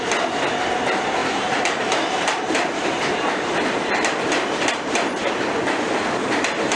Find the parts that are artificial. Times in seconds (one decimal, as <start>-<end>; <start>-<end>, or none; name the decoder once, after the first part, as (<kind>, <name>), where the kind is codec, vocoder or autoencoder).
1.2-5.3 (vocoder, BigVGAN v2)